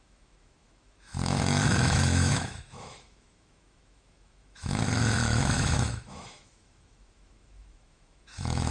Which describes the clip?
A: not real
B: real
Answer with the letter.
A